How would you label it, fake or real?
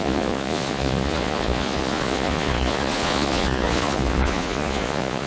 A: fake